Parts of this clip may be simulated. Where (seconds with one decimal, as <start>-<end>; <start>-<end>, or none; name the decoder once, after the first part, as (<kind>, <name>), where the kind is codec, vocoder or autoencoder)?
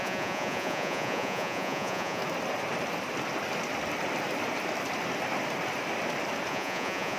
0.0-2.2 (vocoder, Vocos); 6.5-7.2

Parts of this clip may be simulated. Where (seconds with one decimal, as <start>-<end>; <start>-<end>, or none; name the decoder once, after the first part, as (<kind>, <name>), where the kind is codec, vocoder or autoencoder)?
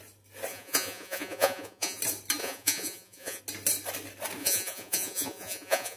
0.5-2.0 (vocoder, Vocos); 2.4-3.4; 4.4-6.0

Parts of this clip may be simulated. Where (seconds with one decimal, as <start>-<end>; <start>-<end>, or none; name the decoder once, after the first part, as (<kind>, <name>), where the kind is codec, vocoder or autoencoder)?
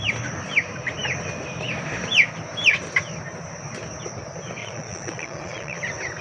4.6-5.8 (vocoder, Vocos)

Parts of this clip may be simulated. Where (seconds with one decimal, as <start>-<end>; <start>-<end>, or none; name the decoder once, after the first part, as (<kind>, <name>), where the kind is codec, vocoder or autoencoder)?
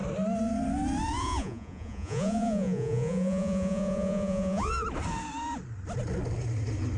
1.2-4.7 (vocoder, Vocos)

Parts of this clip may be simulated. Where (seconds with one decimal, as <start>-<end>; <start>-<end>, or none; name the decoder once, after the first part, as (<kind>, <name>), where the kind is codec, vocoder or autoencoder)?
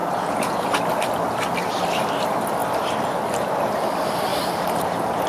0.0-0.8 (vocoder, Vocos)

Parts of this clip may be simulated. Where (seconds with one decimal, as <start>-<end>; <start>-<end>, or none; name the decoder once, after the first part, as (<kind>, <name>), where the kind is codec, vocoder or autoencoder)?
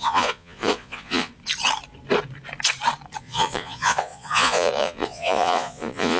0.0-1.3 (vocoder, Vocos); 3.2-6.2